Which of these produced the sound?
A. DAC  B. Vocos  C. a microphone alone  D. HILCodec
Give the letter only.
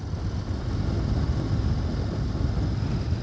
C